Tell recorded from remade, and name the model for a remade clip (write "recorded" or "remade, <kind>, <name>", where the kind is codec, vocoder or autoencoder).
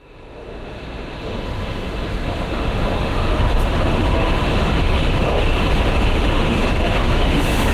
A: remade, autoencoder, DAC-VAE